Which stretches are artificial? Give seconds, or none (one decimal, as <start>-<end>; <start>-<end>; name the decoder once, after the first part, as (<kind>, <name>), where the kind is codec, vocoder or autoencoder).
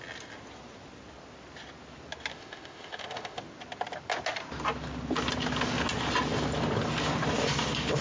2.3-3.4 (autoencoder, DAC-VAE)